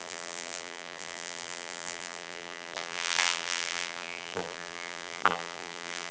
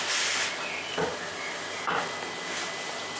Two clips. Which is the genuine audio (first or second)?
second